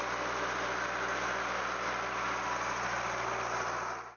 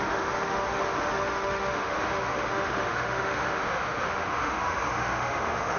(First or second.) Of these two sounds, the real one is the first